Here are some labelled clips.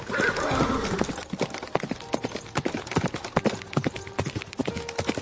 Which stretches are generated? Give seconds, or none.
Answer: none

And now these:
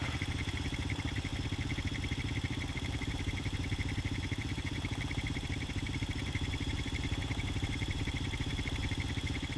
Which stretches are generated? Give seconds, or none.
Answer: 0.0-1.3 (vocoder, BigVGAN v2); 2.7-9.6

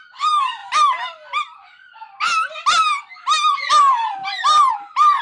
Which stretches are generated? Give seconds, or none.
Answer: 4.2-4.7 (vocoder, BigVGAN v2)

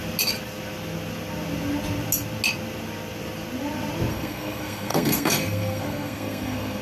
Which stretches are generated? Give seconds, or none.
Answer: 4.1-6.8 (codec, SNAC)

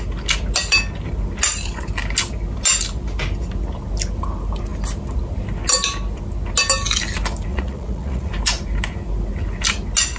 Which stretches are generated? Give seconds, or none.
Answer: 7.5-8.3 (vocoder, Vocos)

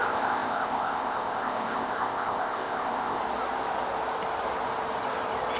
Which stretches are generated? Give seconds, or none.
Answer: 0.0-3.2 (codec, ZipCodec)